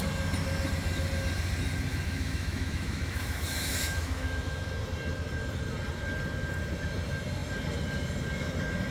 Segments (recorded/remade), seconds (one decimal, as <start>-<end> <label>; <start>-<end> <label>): 0.0-1.9 recorded; 1.9-4.7 remade; 4.7-8.9 recorded